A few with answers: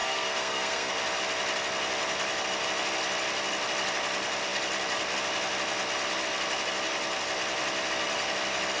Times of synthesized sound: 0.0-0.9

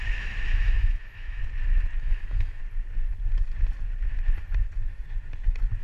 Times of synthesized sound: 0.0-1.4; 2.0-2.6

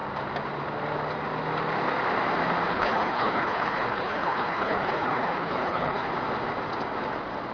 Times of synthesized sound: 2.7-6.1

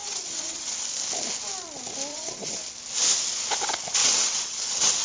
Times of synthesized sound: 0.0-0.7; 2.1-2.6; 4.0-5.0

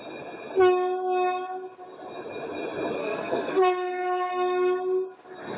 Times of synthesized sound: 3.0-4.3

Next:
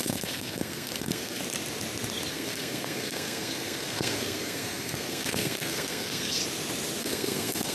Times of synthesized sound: 0.0-1.4; 2.3-6.4; 7.0-7.7